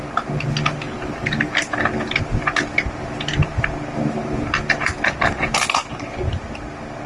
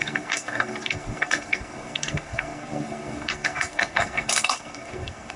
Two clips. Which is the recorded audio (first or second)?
first